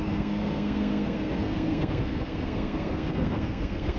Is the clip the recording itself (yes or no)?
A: no